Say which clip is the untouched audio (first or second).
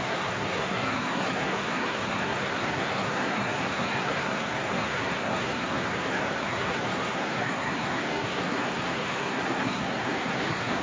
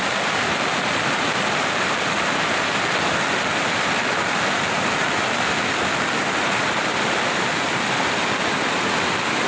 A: second